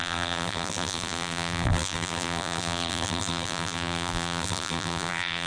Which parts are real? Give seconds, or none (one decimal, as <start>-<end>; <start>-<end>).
none